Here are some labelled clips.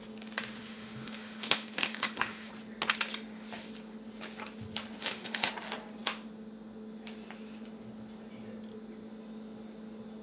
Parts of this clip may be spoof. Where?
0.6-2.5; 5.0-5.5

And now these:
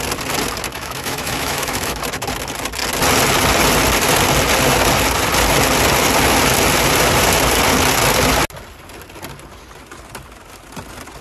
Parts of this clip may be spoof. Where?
0.7-2.0

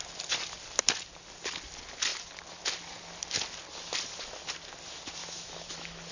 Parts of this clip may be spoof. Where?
5.2-6.1